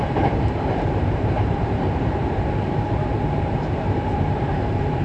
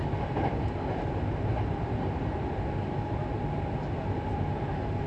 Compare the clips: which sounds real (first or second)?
second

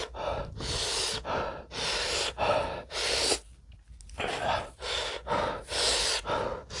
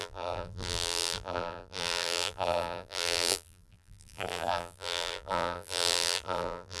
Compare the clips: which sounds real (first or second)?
first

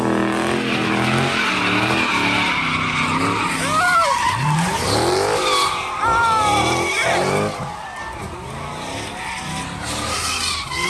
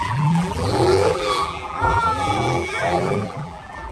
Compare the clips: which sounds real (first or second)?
first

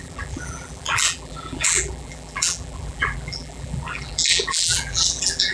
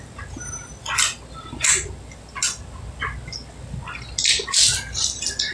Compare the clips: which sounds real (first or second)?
second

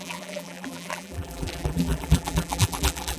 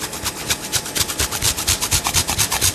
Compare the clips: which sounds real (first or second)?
second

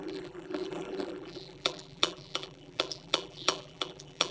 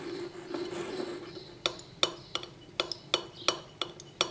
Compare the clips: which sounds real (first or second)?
second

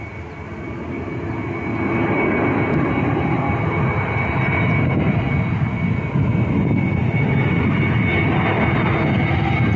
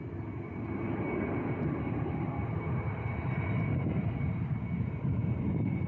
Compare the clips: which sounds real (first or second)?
first